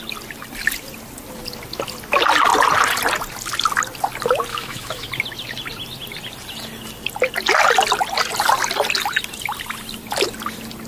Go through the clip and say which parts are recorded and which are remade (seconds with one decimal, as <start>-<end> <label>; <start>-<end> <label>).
0.0-4.5 recorded; 4.5-5.1 remade; 5.1-10.9 recorded